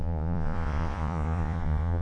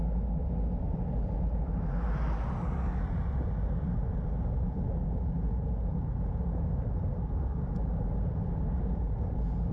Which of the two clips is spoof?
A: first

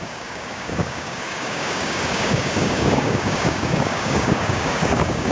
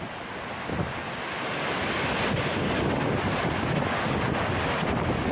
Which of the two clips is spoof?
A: first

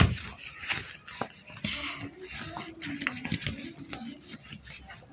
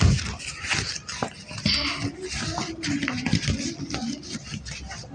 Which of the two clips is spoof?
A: second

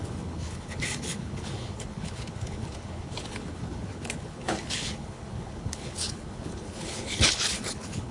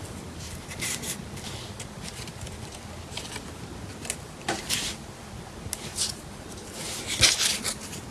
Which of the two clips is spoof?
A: first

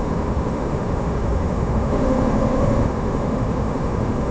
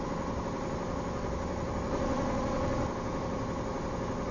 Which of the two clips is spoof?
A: first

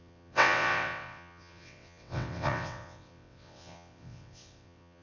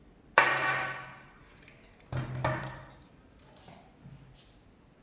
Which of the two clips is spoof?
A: first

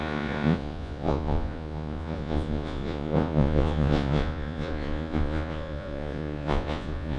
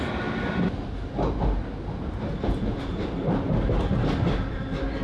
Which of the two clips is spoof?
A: first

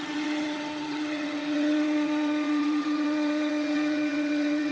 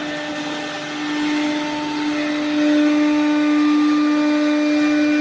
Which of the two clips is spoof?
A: first